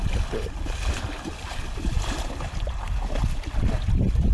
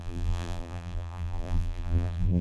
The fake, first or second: second